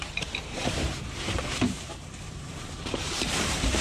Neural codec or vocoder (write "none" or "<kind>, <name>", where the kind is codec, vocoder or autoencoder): vocoder, BigVGAN v2